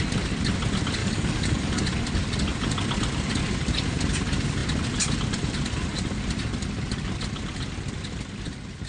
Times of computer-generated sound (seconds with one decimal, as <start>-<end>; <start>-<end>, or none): 1.0-1.8

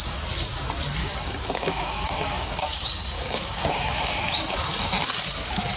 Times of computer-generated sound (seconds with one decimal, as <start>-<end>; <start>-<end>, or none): 1.0-4.2